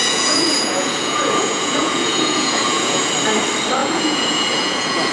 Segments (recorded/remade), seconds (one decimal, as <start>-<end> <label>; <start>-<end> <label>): 0.0-3.1 remade; 3.1-3.8 recorded; 3.8-5.1 remade